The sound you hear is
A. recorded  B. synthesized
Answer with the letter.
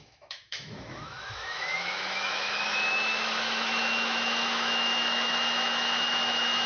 B